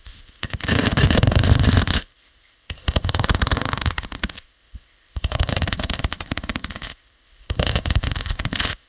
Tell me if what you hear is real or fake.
fake